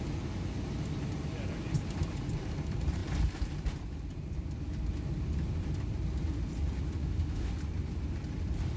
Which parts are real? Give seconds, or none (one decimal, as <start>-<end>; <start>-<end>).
0.0-7.0; 7.5-8.8